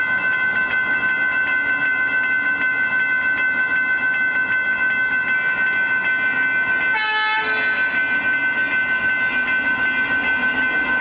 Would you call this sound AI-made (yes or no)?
no